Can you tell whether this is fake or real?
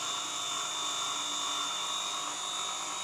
real